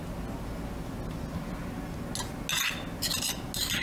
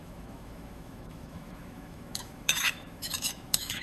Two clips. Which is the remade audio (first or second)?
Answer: second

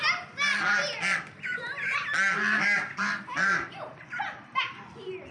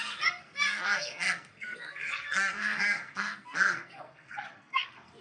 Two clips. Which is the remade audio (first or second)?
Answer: second